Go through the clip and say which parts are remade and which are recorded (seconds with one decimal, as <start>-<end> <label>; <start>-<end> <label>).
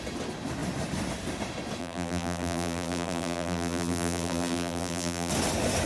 0.0-1.8 recorded; 1.8-5.3 remade; 5.3-5.9 recorded